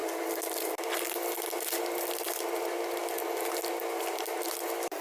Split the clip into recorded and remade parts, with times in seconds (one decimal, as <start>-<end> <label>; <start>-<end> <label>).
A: 0.0-5.0 recorded